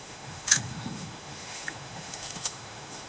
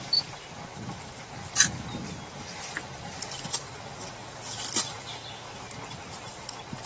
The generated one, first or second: first